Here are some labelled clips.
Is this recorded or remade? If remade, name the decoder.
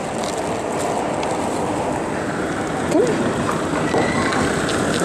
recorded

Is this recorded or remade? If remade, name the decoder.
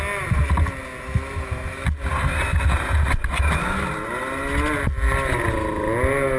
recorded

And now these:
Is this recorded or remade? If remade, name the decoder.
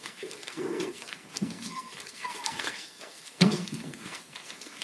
remade, codec, SNAC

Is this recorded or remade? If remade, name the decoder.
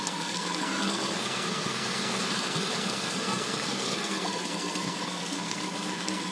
remade, codec, SNAC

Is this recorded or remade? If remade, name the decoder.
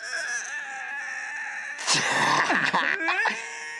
recorded